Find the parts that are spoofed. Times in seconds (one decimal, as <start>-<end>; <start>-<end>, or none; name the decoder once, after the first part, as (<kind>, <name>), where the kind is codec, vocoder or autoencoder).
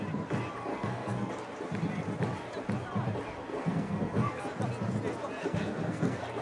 0.7-1.3 (codec, SNAC); 3.5-4.4; 5.4-6.4